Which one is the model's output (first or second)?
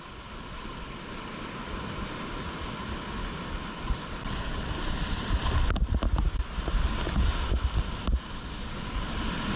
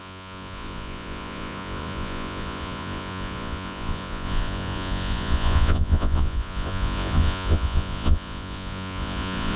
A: second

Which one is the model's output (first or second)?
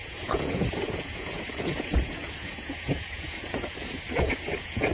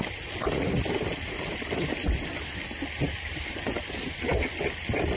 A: first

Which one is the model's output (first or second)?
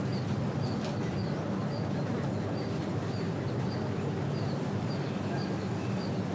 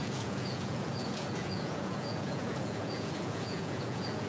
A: second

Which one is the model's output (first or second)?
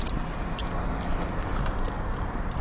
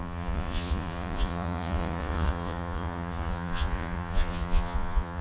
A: second